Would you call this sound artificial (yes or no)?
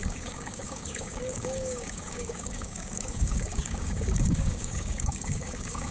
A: yes